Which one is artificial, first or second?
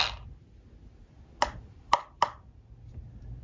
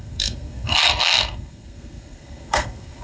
second